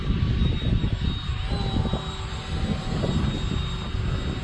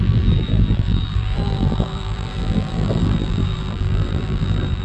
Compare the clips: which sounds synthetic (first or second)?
second